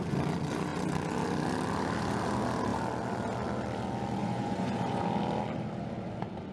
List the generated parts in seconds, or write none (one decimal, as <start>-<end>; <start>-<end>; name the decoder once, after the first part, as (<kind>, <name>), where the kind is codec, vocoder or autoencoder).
4.2-5.0 (vocoder, Vocos)